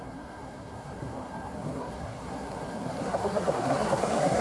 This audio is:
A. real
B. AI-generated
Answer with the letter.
B